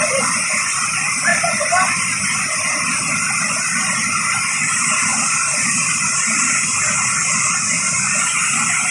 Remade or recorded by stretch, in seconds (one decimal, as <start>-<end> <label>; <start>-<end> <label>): 0.0-5.1 recorded; 5.1-6.0 remade; 6.0-8.9 recorded